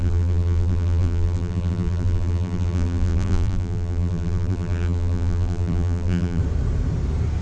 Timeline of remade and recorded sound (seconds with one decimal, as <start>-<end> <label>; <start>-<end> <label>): 0.0-6.4 remade; 6.4-7.4 recorded